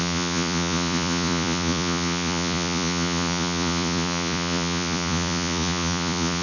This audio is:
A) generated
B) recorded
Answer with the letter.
A